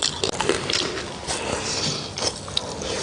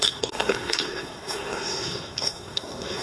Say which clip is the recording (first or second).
first